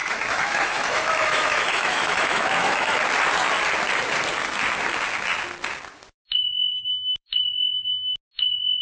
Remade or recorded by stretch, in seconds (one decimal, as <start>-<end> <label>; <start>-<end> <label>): 0.0-3.0 remade; 3.0-6.7 recorded; 6.7-7.3 remade; 7.3-8.8 recorded